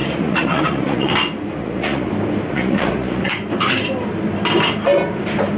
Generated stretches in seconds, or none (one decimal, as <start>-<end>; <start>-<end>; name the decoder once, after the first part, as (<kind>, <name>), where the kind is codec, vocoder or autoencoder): 0.0-1.1 (vocoder, Vocos); 1.6-2.1; 2.5-3.3